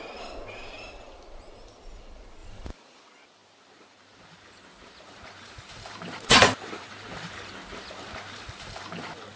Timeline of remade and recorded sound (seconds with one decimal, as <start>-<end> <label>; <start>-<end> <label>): 0.0-2.4 recorded; 2.4-3.0 remade; 3.0-3.4 recorded; 3.4-7.5 remade; 7.5-9.4 recorded